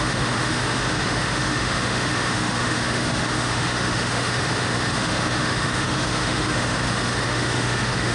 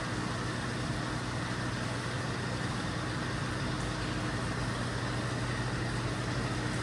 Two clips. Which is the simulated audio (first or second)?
first